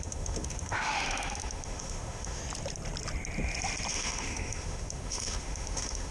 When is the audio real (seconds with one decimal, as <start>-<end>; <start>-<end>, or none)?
2.4-3.9